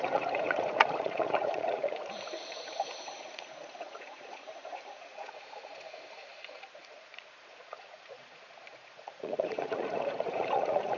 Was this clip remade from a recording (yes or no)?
yes